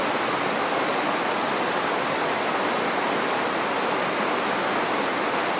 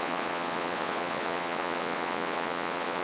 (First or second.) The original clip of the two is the first